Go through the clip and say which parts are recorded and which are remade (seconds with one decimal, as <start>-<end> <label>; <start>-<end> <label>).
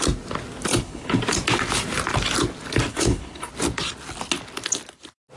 0.0-0.7 recorded; 0.7-1.2 remade; 1.2-2.9 recorded; 2.9-3.5 remade; 3.5-5.4 recorded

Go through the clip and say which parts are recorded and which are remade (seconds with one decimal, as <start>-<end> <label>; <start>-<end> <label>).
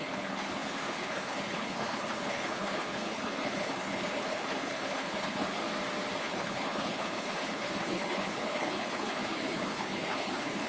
0.0-5.6 remade; 5.6-6.2 recorded; 6.2-10.7 remade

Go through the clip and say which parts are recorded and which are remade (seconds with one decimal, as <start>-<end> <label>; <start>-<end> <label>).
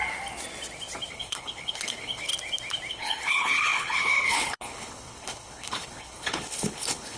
0.0-1.1 recorded; 1.1-2.3 remade; 2.3-2.9 recorded; 2.9-7.2 remade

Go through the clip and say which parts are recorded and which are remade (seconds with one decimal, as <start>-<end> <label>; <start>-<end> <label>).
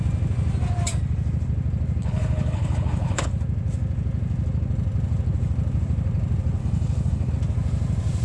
0.0-2.0 recorded; 2.0-3.3 remade; 3.3-6.6 recorded; 6.6-7.3 remade; 7.3-8.2 recorded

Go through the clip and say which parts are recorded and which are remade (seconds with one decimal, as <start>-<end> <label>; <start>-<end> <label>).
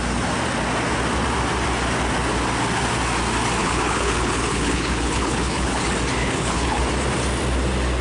0.0-3.6 recorded; 3.6-5.8 remade; 5.8-6.2 recorded; 6.2-6.8 remade; 6.8-8.0 recorded